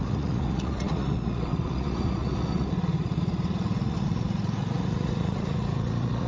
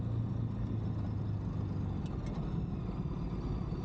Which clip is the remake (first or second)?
first